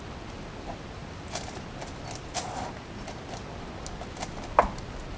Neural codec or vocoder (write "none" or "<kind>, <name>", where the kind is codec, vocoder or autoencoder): none